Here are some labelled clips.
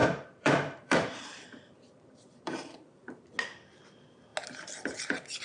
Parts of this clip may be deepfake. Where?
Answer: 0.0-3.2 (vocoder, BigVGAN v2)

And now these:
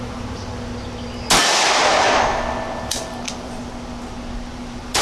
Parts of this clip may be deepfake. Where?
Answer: 0.0-0.7 (vocoder, BigVGAN v2); 2.9-3.6; 4.5-5.0